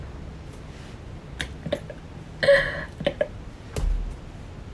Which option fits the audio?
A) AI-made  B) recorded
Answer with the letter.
B